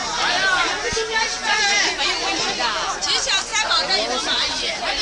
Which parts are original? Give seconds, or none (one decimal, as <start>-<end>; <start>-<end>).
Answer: 0.0-5.0